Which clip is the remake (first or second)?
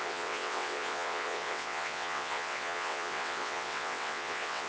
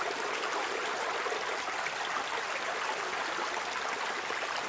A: first